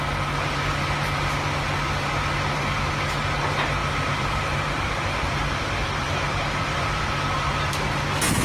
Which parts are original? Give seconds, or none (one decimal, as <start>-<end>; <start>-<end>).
0.0-3.8; 7.9-8.4